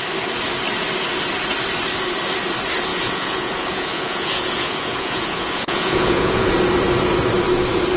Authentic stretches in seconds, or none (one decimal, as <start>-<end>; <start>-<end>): 0.0-2.9; 6.5-8.0